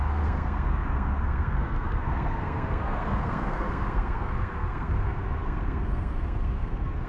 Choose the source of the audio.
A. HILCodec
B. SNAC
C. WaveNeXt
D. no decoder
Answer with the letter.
B